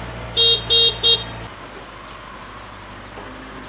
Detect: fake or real real